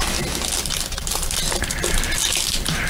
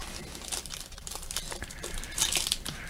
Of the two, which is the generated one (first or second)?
second